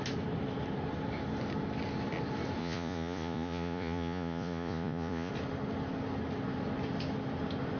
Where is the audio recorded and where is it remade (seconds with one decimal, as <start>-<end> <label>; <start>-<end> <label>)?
0.0-2.6 recorded; 2.6-5.3 remade; 5.3-7.8 recorded